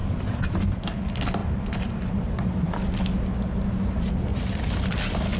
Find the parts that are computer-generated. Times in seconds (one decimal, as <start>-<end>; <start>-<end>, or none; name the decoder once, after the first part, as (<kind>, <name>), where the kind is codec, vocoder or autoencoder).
0.0-0.8 (vocoder, BigVGAN v2); 1.4-2.7; 4.3-4.9